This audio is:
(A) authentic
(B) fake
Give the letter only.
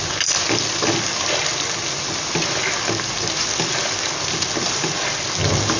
A